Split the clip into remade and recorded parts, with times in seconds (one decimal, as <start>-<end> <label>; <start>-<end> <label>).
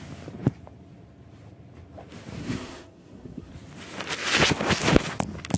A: 0.0-2.4 recorded; 2.4-3.5 remade; 3.5-5.6 recorded